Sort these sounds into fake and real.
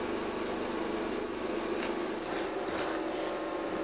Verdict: real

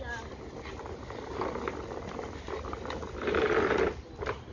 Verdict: real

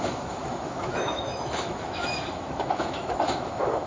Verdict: fake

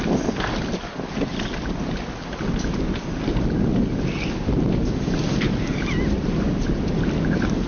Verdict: real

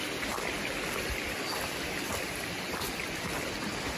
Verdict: real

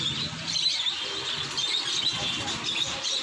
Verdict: real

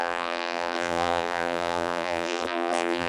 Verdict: fake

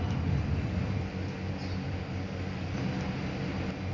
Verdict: real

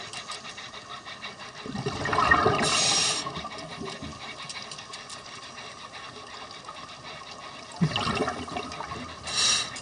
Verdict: real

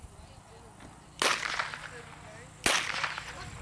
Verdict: real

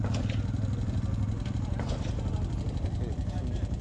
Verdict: real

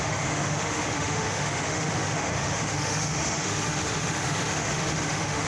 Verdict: fake